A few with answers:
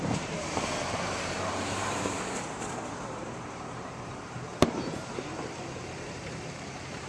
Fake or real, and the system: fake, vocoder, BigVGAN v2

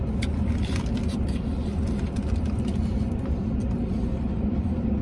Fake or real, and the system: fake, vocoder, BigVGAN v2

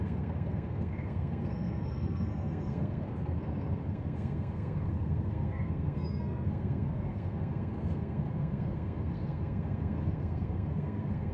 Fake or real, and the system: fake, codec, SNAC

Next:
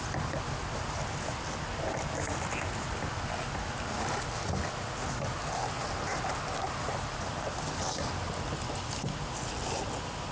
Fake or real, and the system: real